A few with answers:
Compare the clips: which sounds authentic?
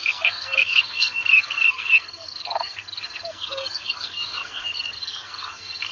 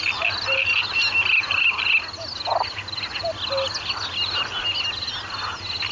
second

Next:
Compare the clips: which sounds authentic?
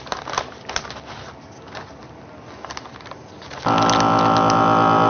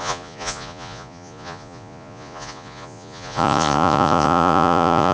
first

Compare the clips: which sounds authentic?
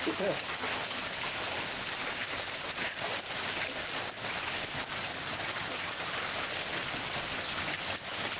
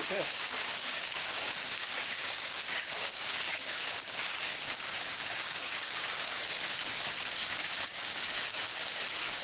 first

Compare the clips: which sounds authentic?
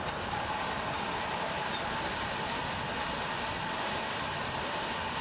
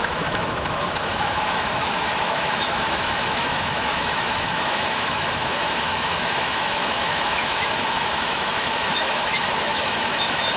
first